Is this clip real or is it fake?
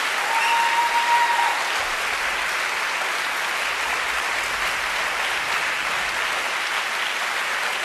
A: real